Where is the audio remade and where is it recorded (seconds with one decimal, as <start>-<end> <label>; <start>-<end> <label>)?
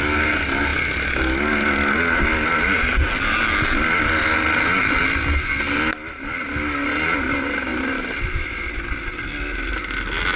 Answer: 0.0-7.7 recorded; 7.7-8.7 remade; 8.7-10.4 recorded